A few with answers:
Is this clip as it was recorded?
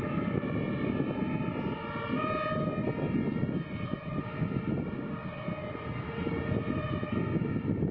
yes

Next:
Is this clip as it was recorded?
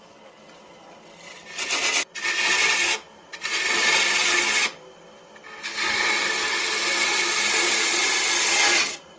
yes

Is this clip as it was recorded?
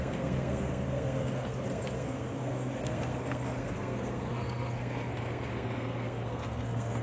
no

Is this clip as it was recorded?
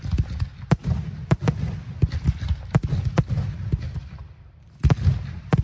yes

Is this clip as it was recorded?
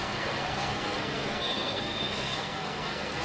no